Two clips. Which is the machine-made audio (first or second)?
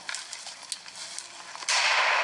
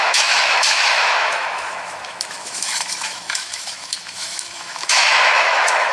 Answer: second